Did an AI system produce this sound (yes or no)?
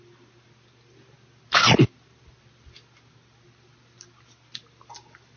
no